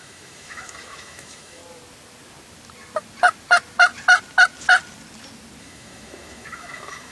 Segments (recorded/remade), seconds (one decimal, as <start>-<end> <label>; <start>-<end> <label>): 0.0-1.6 remade; 1.6-5.6 recorded; 5.6-7.1 remade